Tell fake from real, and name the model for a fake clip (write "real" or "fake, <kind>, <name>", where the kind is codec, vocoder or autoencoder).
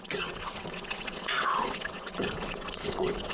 fake, vocoder, WaveNeXt